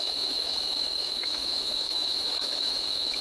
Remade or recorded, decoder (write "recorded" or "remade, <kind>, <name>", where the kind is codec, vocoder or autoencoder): remade, autoencoder, DAC-VAE